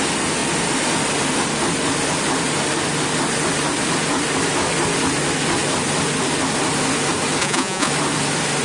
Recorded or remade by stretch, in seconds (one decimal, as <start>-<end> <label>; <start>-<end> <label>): 0.0-7.4 recorded; 7.4-7.9 remade; 7.9-8.6 recorded